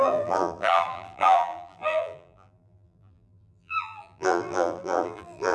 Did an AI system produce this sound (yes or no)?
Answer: yes